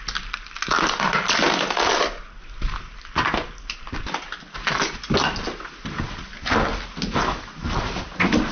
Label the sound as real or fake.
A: real